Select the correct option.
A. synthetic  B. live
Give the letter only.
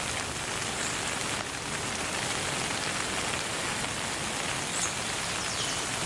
B